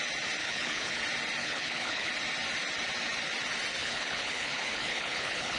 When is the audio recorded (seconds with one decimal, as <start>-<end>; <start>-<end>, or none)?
0.0-0.4; 1.0-1.4; 2.1-3.8